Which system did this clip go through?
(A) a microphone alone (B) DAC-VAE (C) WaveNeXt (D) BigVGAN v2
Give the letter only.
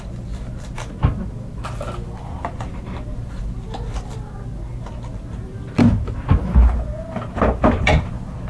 A